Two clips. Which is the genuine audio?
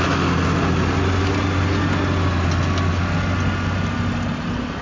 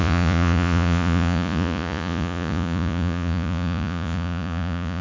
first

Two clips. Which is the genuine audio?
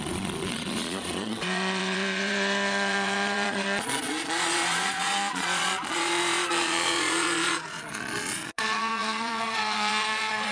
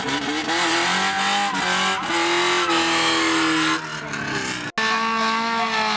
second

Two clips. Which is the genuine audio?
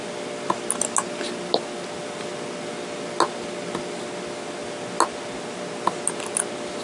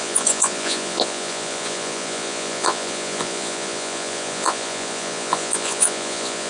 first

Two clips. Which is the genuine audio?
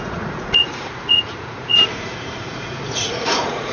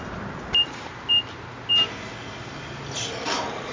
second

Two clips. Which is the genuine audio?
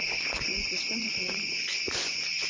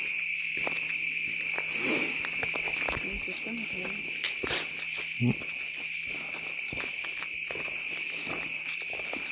second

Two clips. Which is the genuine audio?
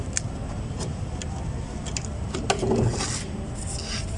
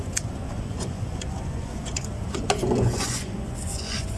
first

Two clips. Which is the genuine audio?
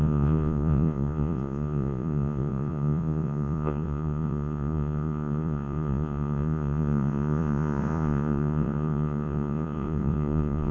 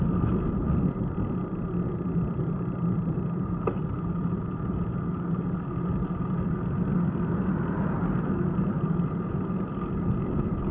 second